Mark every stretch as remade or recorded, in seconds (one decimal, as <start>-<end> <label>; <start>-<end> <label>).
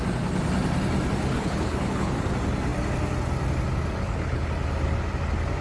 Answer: 0.0-1.3 recorded; 1.3-2.2 remade; 2.2-4.0 recorded; 4.0-4.5 remade; 4.5-5.6 recorded